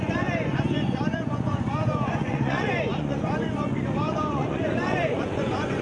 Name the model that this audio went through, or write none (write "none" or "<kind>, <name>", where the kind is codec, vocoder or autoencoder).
vocoder, Vocos